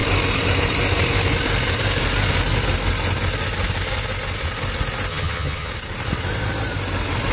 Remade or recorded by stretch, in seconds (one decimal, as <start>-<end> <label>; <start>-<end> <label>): 0.0-5.1 recorded; 5.1-5.7 remade; 5.7-7.3 recorded